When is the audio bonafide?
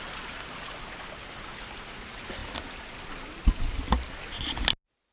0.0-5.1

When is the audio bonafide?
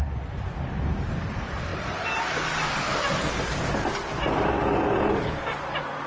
0.0-1.7; 2.2-6.1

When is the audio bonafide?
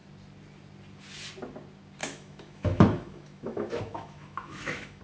0.0-2.0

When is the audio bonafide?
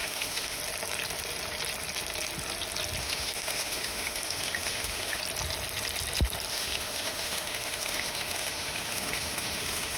0.6-3.0; 5.2-6.5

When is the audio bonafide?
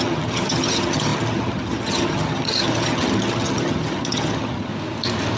4.7-5.4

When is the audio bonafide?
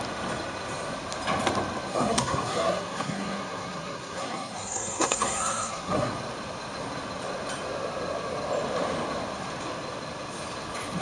0.0-1.9; 6.1-11.0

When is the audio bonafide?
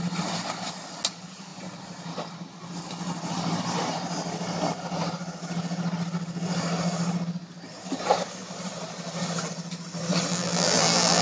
0.0-10.3